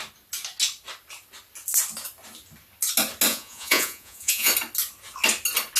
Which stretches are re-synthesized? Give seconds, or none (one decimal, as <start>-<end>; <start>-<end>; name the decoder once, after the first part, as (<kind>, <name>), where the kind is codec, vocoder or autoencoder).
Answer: 3.3-4.5 (vocoder, Vocos)